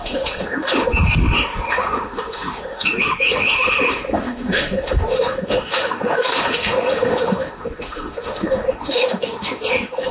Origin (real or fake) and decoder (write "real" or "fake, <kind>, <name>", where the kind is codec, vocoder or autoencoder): fake, autoencoder, DAC-VAE